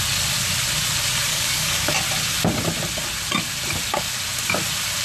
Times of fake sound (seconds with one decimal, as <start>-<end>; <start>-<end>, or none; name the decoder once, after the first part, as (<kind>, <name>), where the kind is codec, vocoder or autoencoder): 1.3-1.9 (codec, DAC)